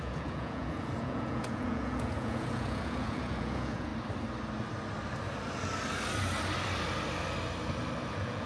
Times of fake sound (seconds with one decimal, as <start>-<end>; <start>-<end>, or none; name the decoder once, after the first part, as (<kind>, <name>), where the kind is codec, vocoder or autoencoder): 0.0-3.9 (vocoder, Vocos); 8.1-8.5